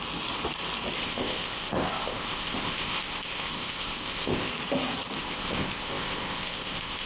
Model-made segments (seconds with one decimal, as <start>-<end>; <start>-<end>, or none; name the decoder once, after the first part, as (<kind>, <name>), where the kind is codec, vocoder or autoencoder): 1.0-4.5 (codec, ZipCodec); 5.2-7.1